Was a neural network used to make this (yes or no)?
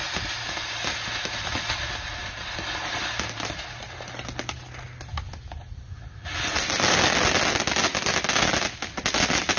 no